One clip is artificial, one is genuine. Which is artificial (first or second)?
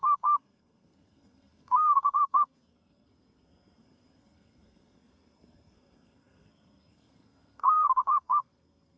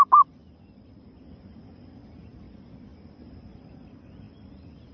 first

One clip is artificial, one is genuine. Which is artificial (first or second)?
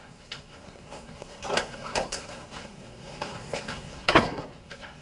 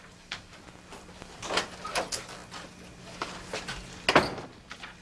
first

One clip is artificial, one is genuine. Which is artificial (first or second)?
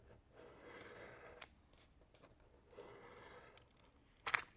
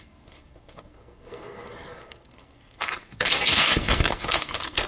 second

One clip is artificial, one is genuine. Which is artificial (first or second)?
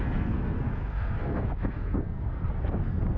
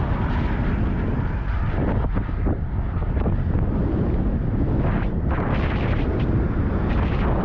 first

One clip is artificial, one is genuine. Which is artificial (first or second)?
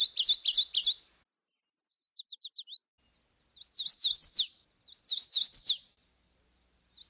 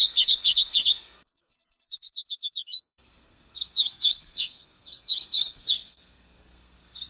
second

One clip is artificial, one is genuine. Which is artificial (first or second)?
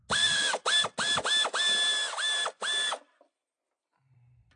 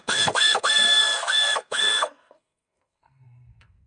second